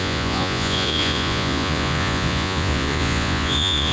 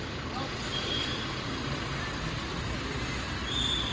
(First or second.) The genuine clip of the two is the second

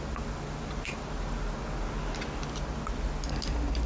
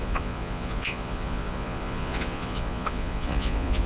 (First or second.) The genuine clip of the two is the first